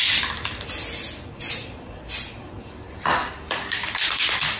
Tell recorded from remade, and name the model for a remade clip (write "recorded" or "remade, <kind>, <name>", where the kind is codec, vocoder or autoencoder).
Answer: recorded